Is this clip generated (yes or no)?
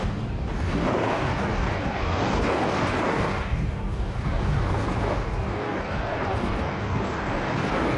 yes